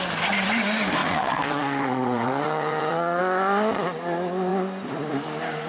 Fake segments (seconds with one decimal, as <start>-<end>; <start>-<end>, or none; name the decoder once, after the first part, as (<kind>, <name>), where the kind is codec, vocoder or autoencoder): 1.0-3.2 (vocoder, WaveNeXt)